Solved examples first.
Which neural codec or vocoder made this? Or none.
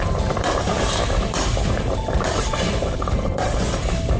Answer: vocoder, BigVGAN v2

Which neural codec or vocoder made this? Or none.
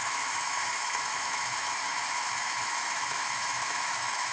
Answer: autoencoder, DAC-VAE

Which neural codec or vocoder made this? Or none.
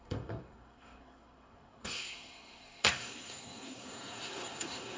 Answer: codec, SNAC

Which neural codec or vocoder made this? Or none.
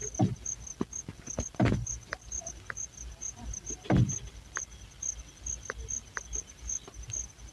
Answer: none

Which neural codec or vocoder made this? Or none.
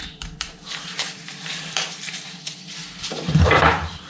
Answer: vocoder, BigVGAN v2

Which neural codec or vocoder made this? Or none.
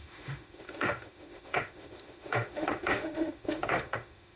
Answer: autoencoder, DAC-VAE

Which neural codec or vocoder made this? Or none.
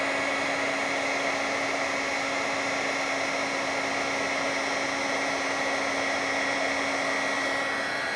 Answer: none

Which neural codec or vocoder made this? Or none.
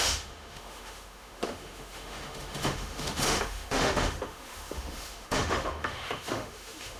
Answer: autoencoder, DAC-VAE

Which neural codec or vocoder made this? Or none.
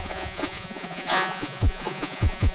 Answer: vocoder, Vocos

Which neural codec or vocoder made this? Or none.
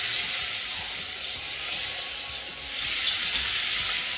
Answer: none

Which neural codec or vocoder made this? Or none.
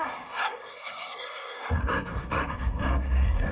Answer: codec, SNAC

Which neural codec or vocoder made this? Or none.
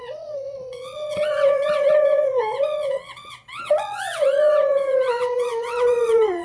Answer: vocoder, WaveNeXt